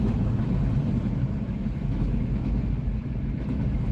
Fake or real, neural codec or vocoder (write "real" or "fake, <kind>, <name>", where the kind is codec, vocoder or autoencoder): fake, autoencoder, DAC-VAE